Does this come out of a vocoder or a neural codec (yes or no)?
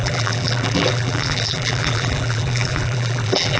yes